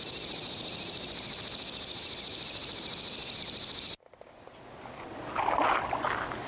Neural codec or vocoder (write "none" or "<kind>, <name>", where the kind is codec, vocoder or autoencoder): none